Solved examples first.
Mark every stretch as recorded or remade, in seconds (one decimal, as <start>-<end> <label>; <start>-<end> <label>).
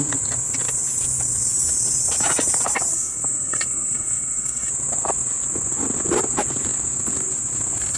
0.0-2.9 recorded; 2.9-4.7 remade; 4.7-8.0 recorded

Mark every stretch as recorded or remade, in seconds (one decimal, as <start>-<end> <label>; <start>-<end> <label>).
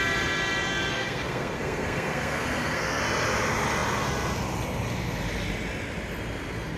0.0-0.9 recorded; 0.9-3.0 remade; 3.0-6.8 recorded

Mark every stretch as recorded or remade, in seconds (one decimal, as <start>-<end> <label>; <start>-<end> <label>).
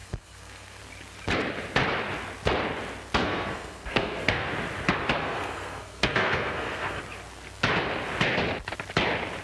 0.0-0.8 remade; 0.8-3.2 recorded; 3.2-4.5 remade; 4.5-5.2 recorded; 5.2-7.0 remade; 7.0-9.4 recorded